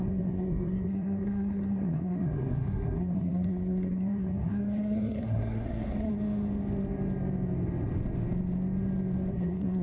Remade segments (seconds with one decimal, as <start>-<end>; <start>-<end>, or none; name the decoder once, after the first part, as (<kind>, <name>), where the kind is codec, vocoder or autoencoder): 0.0-6.1 (codec, SNAC); 9.3-9.8